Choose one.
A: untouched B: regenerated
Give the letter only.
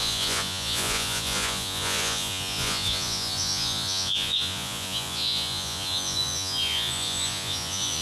B